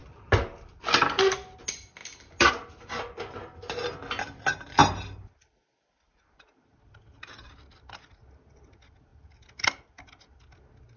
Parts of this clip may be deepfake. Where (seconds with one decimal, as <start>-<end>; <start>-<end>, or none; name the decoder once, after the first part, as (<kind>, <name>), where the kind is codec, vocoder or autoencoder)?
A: 0.0-1.6 (vocoder, BigVGAN v2); 4.8-6.1; 9.1-10.0